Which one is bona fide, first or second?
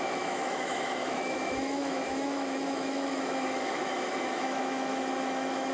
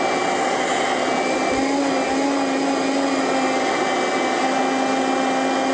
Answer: second